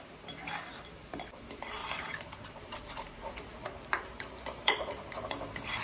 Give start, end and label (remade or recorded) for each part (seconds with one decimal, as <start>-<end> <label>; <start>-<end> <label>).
0.0-1.8 recorded; 1.8-5.3 remade; 5.3-5.8 recorded